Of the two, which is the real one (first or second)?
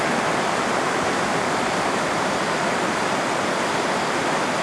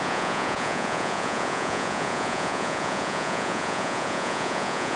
first